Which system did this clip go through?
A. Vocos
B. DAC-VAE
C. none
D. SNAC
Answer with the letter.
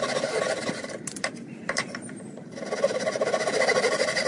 C